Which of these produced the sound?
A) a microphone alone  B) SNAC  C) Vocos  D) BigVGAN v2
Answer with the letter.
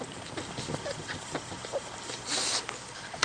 A